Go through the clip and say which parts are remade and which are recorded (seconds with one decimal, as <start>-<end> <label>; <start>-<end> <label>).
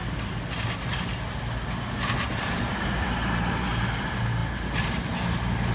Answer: 0.0-5.7 recorded